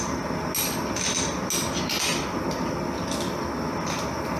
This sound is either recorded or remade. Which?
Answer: recorded